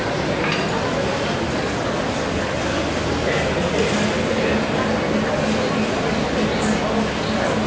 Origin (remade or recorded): recorded